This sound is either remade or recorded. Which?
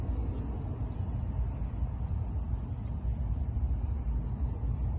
recorded